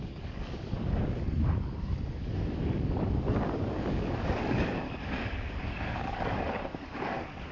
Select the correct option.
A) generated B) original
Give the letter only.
A